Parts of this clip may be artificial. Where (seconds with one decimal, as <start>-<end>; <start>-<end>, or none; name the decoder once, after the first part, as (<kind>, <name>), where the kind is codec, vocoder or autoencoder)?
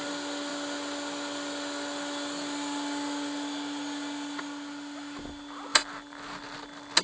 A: none